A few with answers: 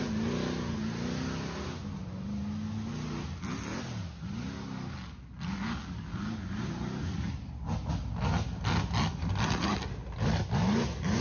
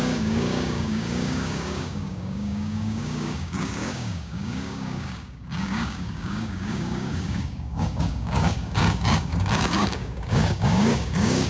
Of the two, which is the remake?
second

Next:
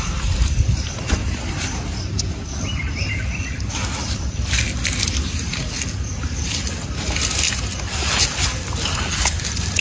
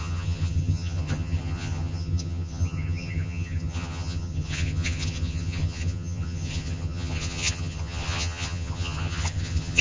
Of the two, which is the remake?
second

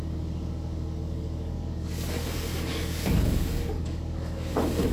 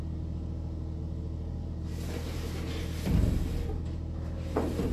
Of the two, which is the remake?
first